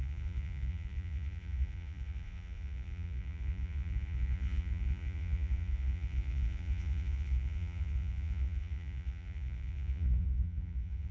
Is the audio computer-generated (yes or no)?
yes